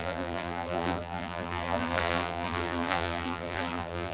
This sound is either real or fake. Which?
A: fake